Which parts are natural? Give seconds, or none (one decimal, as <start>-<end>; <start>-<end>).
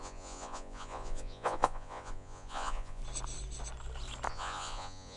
3.0-4.3